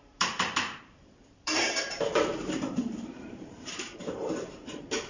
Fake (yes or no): yes